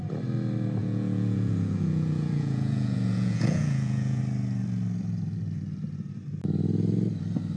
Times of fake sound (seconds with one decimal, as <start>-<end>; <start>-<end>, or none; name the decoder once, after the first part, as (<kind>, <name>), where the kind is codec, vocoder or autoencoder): 0.8-4.2 (vocoder, Vocos)